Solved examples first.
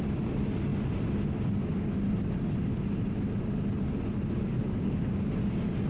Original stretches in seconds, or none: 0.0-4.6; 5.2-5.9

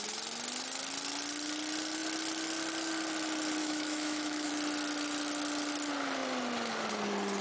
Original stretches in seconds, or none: 0.0-3.6; 4.5-7.4

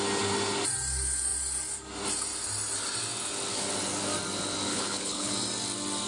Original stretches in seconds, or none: 0.0-4.7; 5.3-6.1

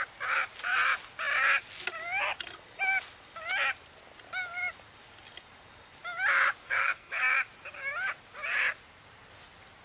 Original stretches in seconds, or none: 0.0-6.6; 7.2-9.8